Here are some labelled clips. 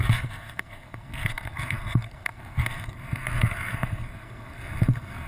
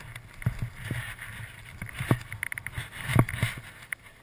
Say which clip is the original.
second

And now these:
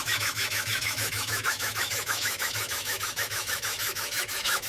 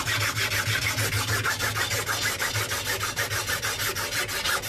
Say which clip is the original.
second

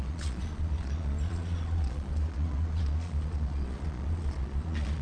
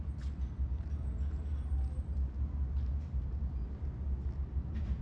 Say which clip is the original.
second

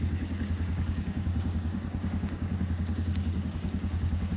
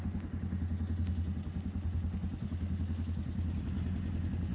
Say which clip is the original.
second